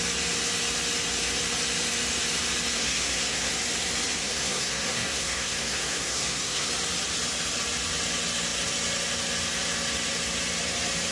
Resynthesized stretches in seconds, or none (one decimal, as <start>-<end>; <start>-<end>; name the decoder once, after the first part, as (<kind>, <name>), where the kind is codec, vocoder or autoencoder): 2.7-3.5 (codec, SNAC); 4.2-6.7